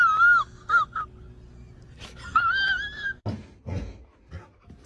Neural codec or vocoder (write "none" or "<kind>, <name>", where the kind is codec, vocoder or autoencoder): none